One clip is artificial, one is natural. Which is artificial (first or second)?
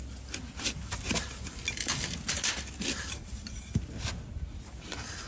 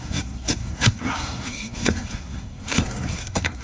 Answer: second